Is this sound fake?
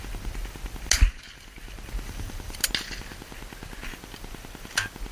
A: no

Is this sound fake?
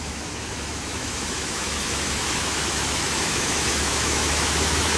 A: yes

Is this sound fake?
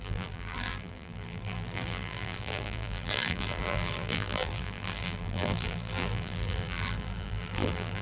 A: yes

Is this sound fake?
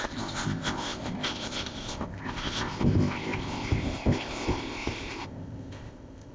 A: yes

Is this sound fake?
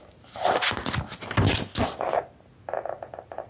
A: no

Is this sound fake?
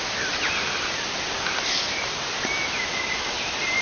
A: yes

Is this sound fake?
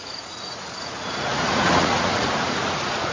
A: yes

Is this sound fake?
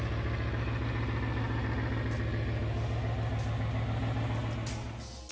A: no